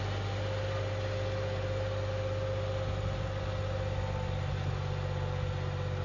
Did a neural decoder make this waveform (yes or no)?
no